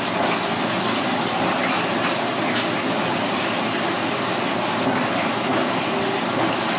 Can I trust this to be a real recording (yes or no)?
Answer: yes